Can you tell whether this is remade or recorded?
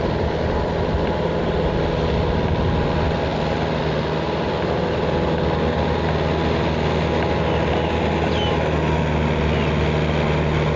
recorded